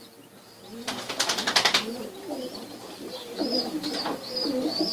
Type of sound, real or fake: fake